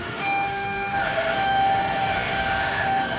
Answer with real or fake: fake